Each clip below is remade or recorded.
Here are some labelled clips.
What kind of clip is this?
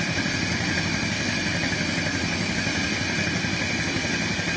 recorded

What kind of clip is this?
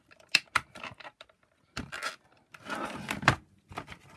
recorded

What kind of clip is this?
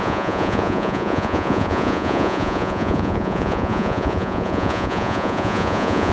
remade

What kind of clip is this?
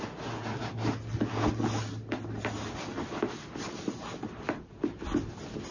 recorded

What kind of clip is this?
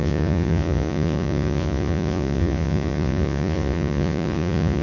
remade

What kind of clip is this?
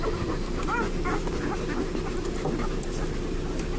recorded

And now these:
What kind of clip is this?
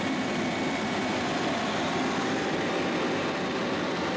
recorded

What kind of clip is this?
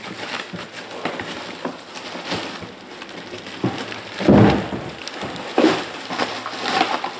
recorded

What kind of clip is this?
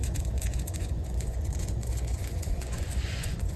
remade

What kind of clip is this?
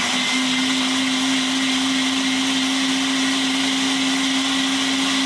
recorded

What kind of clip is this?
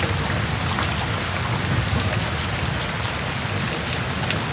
recorded